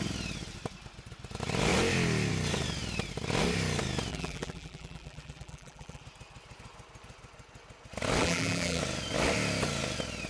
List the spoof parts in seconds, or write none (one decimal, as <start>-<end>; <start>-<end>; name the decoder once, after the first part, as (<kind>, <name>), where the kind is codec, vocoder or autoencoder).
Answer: 4.1-6.0 (vocoder, BigVGAN v2); 8.2-8.8